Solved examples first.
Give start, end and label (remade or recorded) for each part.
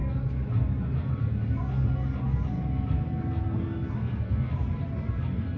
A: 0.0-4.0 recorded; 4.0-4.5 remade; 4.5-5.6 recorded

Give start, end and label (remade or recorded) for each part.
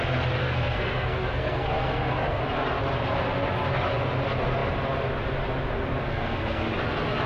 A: 0.0-0.4 recorded; 0.4-2.4 remade; 2.4-6.0 recorded; 6.0-6.7 remade; 6.7-7.3 recorded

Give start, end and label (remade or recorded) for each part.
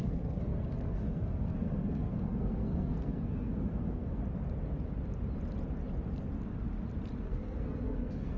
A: 0.0-4.2 remade; 4.2-7.2 recorded; 7.2-8.4 remade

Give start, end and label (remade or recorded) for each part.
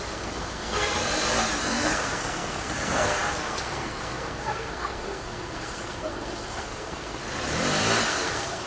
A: 0.0-1.0 remade; 1.0-1.6 recorded; 1.6-7.2 remade; 7.2-8.0 recorded; 8.0-8.7 remade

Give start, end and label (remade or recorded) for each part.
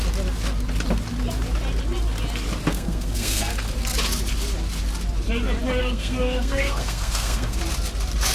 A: 0.0-2.7 recorded; 2.7-3.5 remade; 3.5-5.8 recorded; 5.8-7.6 remade; 7.6-8.3 recorded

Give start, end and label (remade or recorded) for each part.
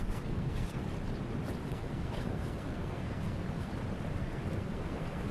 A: 0.0-0.8 remade; 0.8-1.7 recorded; 1.7-3.7 remade; 3.7-4.2 recorded; 4.2-5.3 remade